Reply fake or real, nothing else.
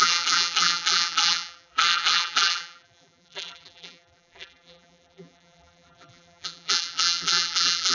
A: fake